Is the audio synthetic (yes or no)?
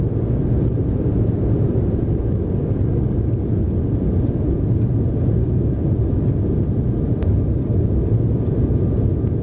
no